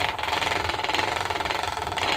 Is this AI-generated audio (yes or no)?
no